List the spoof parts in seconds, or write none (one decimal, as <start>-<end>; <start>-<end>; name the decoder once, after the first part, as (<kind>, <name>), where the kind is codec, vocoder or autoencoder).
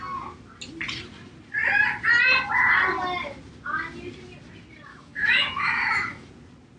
4.9-6.3 (autoencoder, DAC-VAE)